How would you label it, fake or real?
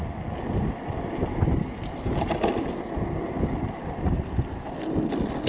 real